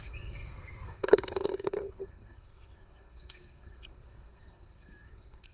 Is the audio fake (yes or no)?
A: yes